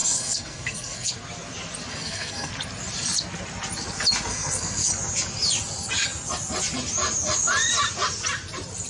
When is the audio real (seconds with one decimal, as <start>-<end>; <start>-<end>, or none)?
1.1-1.9; 2.5-4.3; 4.9-8.9